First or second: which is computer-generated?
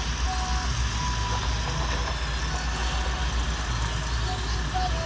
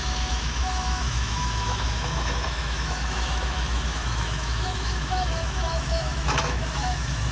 second